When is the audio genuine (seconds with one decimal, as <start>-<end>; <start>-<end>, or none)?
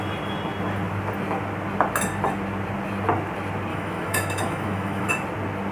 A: 0.0-3.7; 5.1-5.7